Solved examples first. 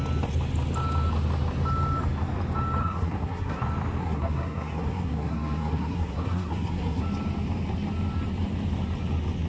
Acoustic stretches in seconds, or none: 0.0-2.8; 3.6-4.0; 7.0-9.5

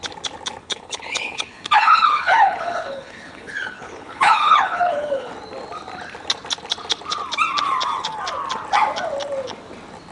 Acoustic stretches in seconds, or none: 0.0-0.6; 5.3-10.1

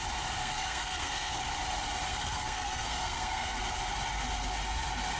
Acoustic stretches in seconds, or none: 0.0-0.4; 1.4-2.1; 3.6-5.2

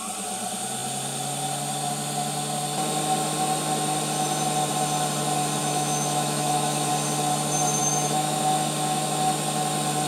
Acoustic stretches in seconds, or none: 0.0-5.6; 6.9-7.8; 8.4-10.1

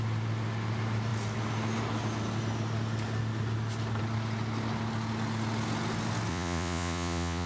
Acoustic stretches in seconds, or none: 0.0-6.3

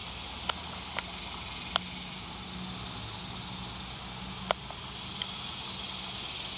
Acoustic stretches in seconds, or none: 0.0-6.6